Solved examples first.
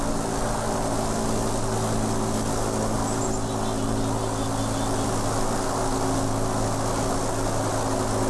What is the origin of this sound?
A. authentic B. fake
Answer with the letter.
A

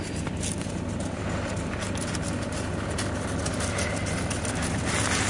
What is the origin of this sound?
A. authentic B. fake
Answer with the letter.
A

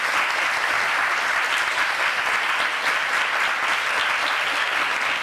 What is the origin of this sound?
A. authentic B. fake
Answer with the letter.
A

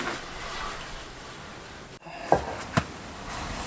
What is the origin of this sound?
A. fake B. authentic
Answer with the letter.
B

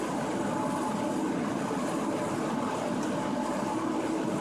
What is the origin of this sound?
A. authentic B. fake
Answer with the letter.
A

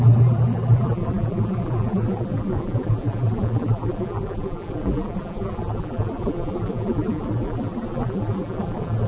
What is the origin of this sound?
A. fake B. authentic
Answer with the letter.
A